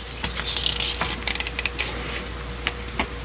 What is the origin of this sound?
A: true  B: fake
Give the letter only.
A